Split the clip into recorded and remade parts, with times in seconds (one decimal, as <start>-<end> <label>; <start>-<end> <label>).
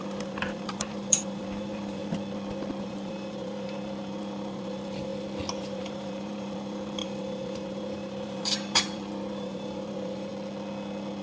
0.0-2.0 remade; 2.0-2.8 recorded; 2.8-5.1 remade; 5.1-5.6 recorded; 5.6-10.3 remade; 10.3-11.2 recorded